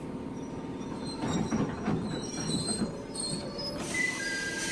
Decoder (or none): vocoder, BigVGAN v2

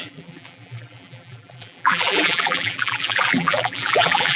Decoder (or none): vocoder, BigVGAN v2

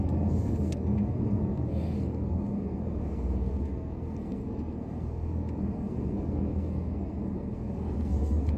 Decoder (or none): codec, SNAC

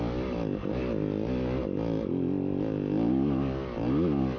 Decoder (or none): none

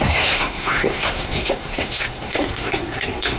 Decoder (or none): codec, SNAC